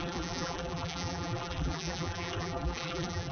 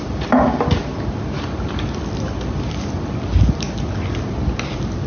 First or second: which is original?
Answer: second